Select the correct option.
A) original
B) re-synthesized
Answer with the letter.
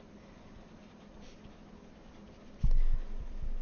A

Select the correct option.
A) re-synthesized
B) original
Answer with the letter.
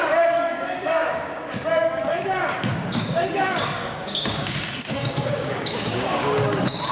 A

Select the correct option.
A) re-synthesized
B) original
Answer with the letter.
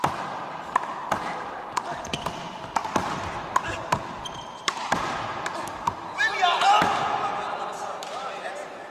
A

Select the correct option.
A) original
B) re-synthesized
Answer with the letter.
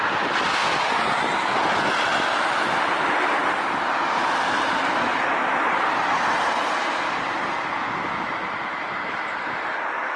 A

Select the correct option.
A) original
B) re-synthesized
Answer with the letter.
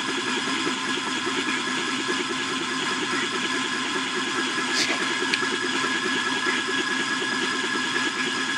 A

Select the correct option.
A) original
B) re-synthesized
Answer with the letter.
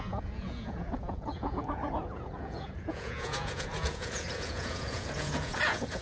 B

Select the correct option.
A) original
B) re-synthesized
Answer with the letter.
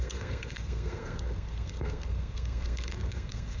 B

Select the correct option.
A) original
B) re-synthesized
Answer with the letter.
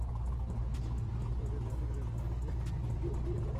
A